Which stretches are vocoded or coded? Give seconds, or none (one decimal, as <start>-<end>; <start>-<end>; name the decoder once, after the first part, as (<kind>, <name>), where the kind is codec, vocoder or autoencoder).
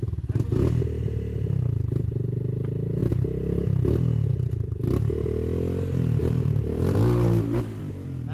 6.2-7.8 (vocoder, BigVGAN v2)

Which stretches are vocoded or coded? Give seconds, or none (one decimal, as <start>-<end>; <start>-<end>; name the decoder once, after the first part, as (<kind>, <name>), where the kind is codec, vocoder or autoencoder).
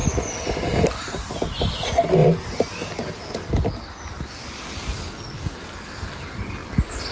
none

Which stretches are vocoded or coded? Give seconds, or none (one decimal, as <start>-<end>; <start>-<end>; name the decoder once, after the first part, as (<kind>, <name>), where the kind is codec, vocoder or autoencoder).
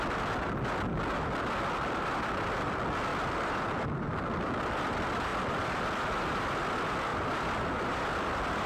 5.3-6.4 (vocoder, BigVGAN v2); 7.1-8.7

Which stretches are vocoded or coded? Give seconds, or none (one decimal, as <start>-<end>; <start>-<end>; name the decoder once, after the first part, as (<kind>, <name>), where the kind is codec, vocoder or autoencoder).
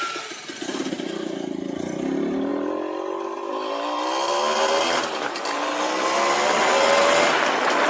none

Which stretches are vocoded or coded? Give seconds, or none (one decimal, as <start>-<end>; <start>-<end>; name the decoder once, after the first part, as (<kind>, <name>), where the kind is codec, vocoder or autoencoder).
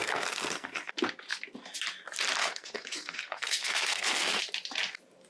0.0-0.9 (codec, SNAC); 2.4-4.4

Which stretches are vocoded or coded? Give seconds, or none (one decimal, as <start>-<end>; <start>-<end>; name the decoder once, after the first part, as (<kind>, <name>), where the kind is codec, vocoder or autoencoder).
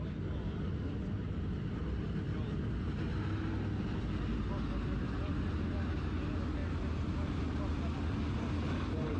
6.6-7.4 (vocoder, BigVGAN v2)